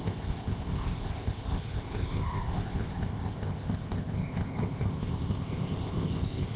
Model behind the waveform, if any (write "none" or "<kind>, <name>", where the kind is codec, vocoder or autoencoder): codec, ZipCodec